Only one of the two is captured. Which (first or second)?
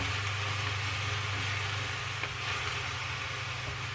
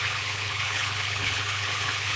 first